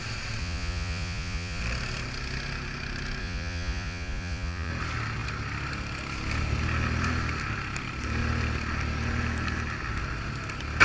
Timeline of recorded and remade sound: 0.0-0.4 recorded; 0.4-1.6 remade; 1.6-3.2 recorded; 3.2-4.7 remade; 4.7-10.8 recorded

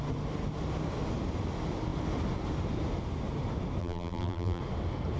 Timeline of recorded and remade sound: 0.0-3.8 recorded; 3.8-4.6 remade; 4.6-5.2 recorded

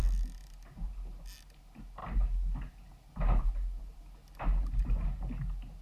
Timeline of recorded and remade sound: 0.0-5.8 recorded